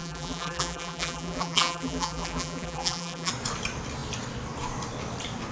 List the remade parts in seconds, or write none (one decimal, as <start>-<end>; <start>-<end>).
0.0-3.3